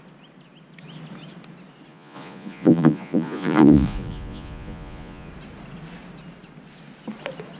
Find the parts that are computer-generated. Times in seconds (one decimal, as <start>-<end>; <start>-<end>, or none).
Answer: 1.9-5.3